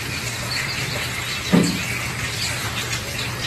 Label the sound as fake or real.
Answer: real